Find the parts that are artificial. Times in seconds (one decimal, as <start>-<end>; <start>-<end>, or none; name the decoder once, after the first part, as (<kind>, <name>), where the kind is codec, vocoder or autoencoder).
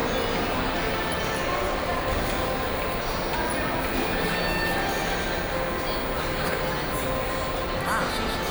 none